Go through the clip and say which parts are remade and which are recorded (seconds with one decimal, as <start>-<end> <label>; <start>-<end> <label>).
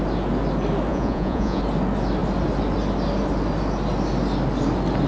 0.0-0.9 recorded; 0.9-1.6 remade; 1.6-5.1 recorded